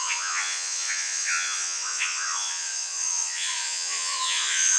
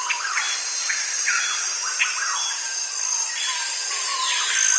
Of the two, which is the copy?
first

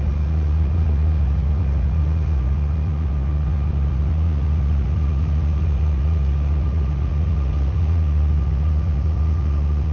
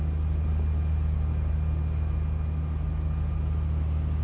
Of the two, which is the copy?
first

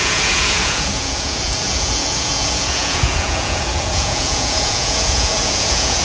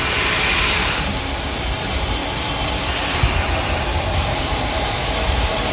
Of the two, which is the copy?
first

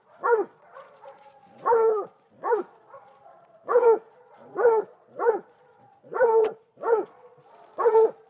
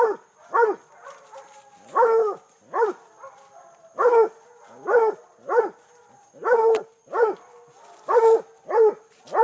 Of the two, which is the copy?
first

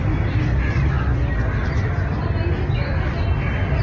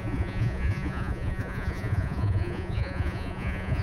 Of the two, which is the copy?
second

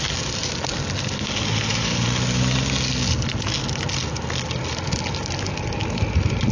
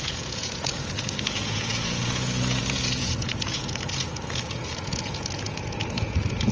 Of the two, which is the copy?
second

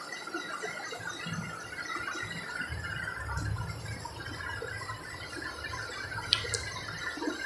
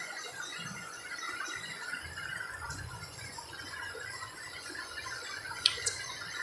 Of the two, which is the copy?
second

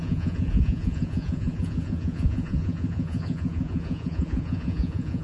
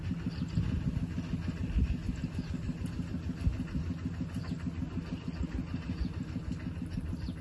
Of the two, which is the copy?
first